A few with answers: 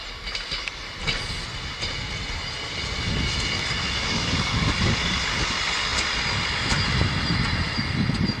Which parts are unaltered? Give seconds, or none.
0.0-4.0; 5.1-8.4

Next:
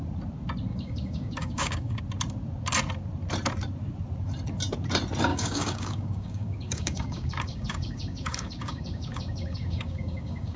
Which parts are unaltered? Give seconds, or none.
0.0-0.7; 2.0-5.3

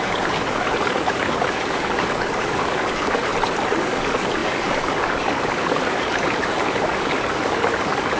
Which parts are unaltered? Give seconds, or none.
3.3-3.8

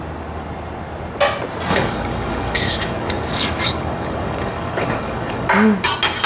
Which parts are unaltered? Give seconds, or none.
0.0-1.7; 5.5-6.3

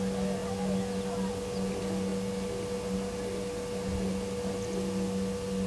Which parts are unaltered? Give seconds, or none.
0.0-5.7

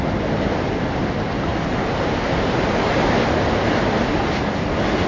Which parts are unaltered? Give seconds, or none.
0.0-5.1

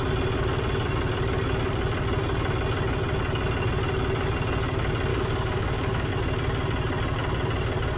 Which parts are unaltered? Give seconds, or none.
0.0-5.1; 6.1-8.0